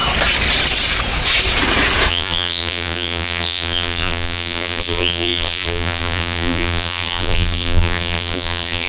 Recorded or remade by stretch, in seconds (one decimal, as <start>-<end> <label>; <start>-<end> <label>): 0.0-2.1 recorded; 2.1-8.9 remade